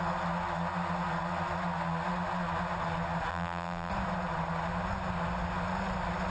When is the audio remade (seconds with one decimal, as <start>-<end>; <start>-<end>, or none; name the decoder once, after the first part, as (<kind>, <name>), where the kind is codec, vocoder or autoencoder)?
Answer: 3.3-3.9 (vocoder, BigVGAN v2)